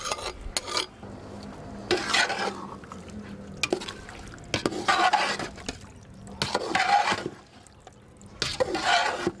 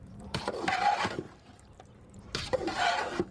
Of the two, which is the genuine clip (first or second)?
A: first